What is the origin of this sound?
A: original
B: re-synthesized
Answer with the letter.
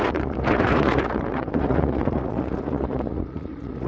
B